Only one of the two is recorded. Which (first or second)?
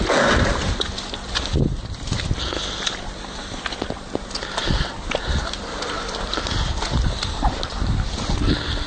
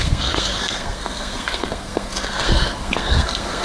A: first